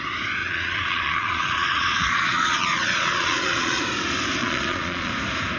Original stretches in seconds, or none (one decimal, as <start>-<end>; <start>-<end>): 0.0-0.4; 3.8-4.4; 5.1-5.6